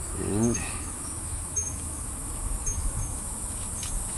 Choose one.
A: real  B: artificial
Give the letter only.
B